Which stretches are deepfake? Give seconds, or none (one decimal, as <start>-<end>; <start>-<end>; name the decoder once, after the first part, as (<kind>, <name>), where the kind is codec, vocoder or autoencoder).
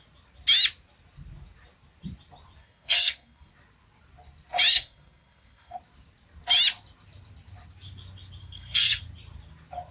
2.6-3.5 (codec, SNAC); 4.7-5.8; 8.4-9.0